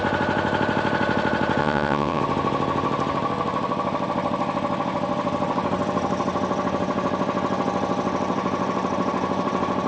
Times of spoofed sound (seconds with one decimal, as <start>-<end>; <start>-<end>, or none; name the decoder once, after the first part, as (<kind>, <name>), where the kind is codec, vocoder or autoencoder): 1.6-2.2 (vocoder, WaveNeXt)